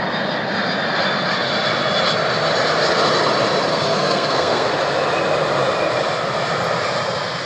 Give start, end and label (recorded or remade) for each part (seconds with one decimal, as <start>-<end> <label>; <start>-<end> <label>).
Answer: 0.0-3.7 recorded; 3.7-4.7 remade; 4.7-7.5 recorded